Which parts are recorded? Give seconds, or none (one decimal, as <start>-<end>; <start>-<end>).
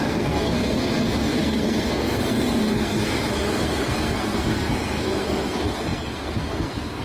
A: none